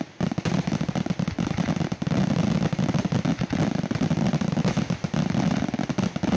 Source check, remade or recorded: recorded